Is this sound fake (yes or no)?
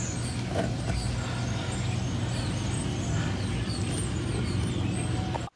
no